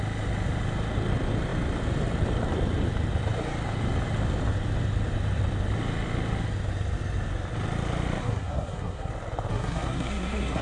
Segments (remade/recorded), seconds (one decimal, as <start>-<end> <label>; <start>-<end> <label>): 0.0-8.2 recorded; 8.2-9.1 remade; 9.1-9.5 recorded; 9.5-10.6 remade